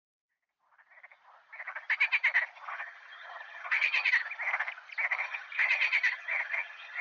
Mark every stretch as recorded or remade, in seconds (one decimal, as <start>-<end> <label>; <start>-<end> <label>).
0.0-2.7 recorded; 2.7-4.1 remade; 4.1-5.2 recorded; 5.2-7.0 remade